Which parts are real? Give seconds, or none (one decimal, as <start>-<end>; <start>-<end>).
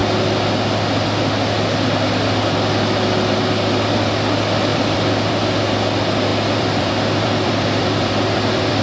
0.0-4.7; 5.3-6.3